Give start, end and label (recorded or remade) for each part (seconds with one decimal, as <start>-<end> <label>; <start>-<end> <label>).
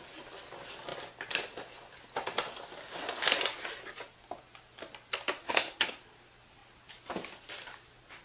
0.0-5.4 recorded; 5.4-6.0 remade; 6.0-8.2 recorded